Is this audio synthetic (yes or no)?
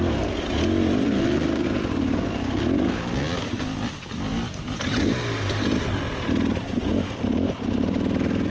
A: no